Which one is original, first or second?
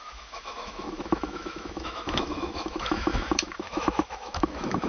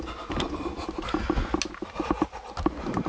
second